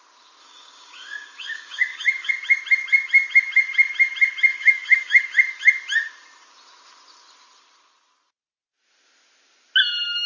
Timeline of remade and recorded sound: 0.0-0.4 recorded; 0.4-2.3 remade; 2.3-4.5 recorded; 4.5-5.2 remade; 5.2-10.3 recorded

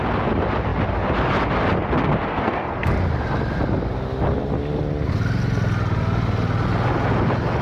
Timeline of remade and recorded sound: 0.0-2.3 recorded; 2.3-2.9 remade; 2.9-7.6 recorded

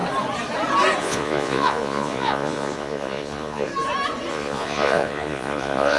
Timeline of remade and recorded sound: 0.0-1.0 recorded; 1.0-3.7 remade; 3.7-4.3 recorded; 4.3-6.0 remade

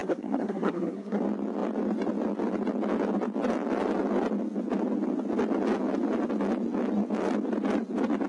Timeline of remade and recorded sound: 0.0-1.2 remade; 1.2-8.3 recorded

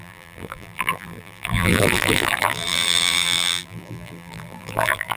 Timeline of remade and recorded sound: 0.0-5.2 remade

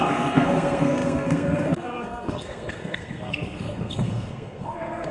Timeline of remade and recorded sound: 0.0-5.1 remade

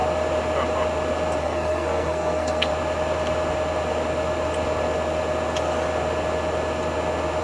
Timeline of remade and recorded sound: 0.0-1.4 recorded; 1.4-2.7 remade; 2.7-7.4 recorded